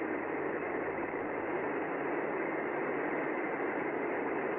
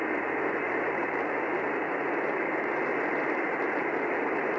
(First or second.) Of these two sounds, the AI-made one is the first